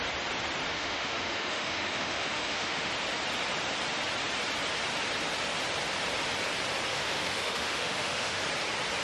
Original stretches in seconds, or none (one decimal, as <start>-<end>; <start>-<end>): 0.0-0.7; 2.9-6.9; 8.4-9.0